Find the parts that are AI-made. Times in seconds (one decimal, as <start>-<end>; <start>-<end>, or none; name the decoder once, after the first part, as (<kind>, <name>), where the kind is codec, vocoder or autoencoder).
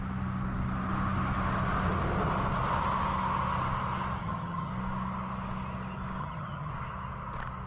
4.2-4.7 (vocoder, HiFi-GAN); 6.2-6.7